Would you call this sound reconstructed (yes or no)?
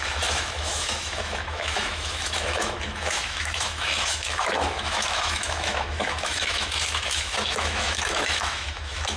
yes